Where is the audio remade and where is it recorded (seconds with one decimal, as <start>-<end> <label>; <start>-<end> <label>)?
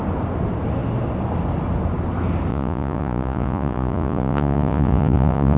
0.0-2.5 recorded; 2.5-5.6 remade